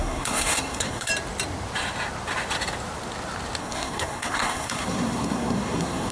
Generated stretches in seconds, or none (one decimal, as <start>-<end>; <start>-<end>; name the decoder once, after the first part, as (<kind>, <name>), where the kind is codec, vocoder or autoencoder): 0.0-1.1 (codec, SNAC); 3.6-6.1